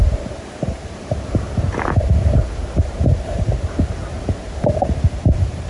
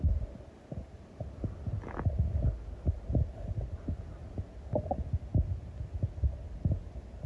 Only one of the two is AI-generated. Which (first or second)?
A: first